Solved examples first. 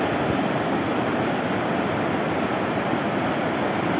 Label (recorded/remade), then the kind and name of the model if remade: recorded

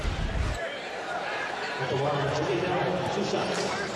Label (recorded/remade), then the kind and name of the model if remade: remade, vocoder, BigVGAN v2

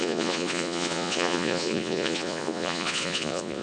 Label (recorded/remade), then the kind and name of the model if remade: remade, vocoder, Vocos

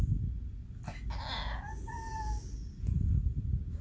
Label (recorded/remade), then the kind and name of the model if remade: recorded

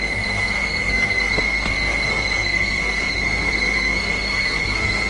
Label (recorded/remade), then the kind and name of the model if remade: remade, codec, SNAC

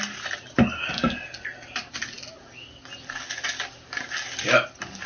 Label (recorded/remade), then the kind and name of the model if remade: recorded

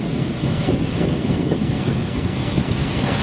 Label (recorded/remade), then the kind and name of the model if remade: remade, codec, SNAC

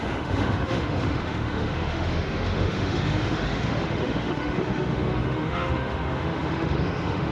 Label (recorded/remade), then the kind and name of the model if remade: remade, autoencoder, DAC-VAE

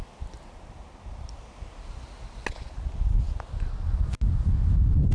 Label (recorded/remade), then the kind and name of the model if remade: recorded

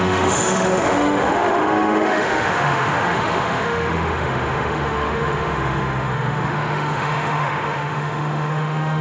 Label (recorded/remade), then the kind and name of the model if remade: remade, autoencoder, DAC-VAE